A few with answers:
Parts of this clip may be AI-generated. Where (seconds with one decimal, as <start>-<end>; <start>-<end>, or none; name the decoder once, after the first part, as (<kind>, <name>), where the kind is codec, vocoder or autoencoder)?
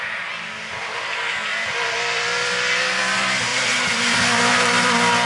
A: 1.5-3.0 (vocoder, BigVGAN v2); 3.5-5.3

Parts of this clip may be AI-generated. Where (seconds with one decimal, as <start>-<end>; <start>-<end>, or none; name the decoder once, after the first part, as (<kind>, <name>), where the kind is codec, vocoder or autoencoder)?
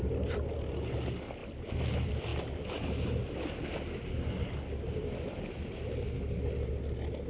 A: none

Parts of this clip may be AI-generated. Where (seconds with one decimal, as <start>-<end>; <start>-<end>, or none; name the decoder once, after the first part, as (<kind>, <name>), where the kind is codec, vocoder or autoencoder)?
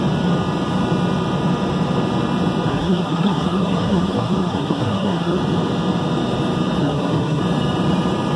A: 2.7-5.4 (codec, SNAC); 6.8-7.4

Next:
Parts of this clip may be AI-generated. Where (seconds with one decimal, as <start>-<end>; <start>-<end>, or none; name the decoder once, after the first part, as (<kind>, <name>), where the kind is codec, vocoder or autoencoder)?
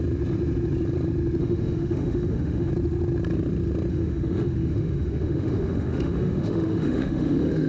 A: 1.4-2.7 (autoencoder, DAC-VAE); 3.9-7.7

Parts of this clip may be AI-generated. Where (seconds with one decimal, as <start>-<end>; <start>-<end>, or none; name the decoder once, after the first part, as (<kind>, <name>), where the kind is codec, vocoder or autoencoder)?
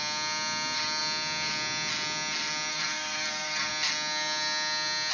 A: 2.7-3.7 (codec, SNAC)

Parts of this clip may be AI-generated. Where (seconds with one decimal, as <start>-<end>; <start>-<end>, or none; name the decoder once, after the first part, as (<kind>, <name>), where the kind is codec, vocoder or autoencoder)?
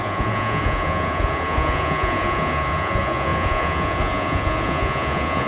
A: 0.0-5.5 (vocoder, Vocos)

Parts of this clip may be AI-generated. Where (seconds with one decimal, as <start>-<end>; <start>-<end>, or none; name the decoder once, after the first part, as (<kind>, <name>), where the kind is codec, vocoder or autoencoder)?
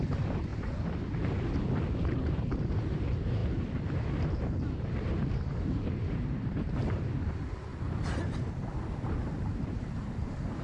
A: 0.0-0.5 (vocoder, BigVGAN v2); 1.8-3.4; 4.4-7.7; 9.0-10.6